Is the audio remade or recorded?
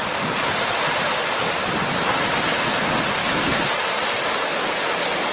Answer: recorded